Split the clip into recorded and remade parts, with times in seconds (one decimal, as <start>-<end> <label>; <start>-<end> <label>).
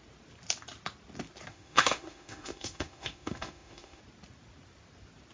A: 0.0-1.5 recorded; 1.5-4.0 remade; 4.0-5.3 recorded